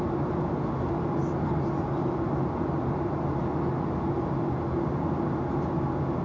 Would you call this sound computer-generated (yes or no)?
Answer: no